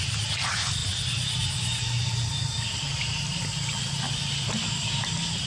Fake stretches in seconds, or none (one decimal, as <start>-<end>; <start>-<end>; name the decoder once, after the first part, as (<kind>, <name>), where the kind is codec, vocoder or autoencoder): none